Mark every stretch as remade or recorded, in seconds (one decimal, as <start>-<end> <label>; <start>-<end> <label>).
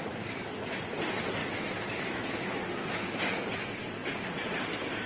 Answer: 0.0-1.4 recorded; 1.4-3.2 remade; 3.2-5.1 recorded